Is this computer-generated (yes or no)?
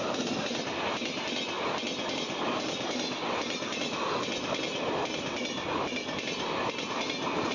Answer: no